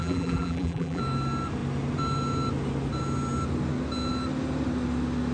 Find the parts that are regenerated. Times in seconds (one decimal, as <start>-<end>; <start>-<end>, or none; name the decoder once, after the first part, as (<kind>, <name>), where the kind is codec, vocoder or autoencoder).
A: 0.0-1.0 (vocoder, BigVGAN v2)